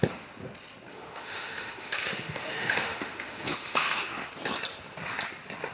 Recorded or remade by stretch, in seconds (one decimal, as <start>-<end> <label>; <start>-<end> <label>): 0.0-0.9 recorded; 0.9-4.3 remade; 4.3-5.7 recorded